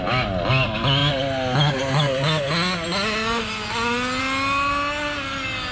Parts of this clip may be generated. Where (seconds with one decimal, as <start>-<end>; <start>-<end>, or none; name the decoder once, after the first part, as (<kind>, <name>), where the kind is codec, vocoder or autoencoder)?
none